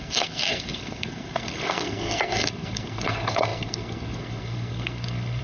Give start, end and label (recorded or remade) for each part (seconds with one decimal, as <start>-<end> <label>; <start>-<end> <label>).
0.0-5.4 remade